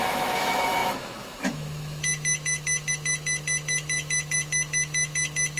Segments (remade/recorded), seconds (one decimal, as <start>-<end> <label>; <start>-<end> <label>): 0.0-5.6 remade